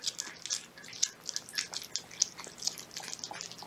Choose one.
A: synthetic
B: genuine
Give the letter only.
B